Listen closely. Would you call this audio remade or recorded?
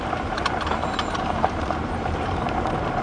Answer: remade